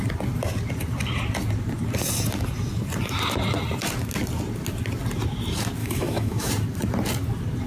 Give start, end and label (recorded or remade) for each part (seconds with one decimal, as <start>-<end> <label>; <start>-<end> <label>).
0.0-5.8 recorded; 5.8-6.5 remade; 6.5-7.7 recorded